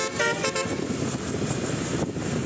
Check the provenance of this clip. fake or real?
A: real